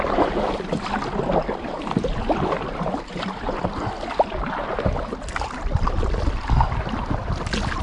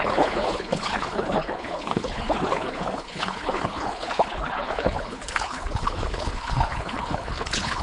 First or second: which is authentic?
first